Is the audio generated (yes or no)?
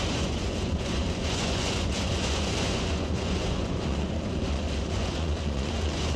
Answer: yes